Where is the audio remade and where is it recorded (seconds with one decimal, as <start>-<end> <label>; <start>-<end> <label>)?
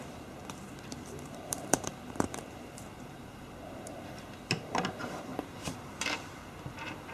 0.0-0.4 remade; 0.4-1.1 recorded; 1.1-7.1 remade